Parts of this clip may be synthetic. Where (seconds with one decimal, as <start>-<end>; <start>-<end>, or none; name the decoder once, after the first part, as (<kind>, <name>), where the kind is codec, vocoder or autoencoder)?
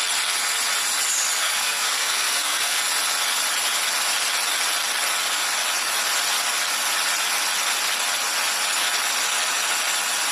1.4-2.8 (codec, SNAC)